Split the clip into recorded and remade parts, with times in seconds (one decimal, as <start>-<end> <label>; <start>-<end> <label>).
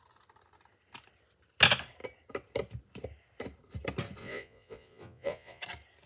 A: 0.0-4.2 recorded; 4.2-5.6 remade; 5.6-6.1 recorded